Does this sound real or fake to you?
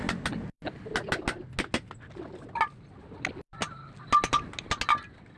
real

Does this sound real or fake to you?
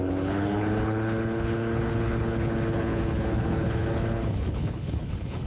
fake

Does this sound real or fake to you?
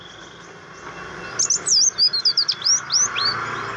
real